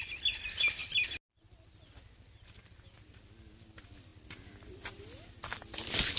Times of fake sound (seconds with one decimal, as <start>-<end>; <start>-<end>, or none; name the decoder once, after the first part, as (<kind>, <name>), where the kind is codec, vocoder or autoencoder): none